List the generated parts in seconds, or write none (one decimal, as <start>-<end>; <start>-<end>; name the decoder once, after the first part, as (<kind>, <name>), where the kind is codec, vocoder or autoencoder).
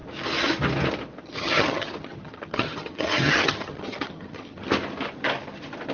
1.2-4.7 (vocoder, HiFi-GAN)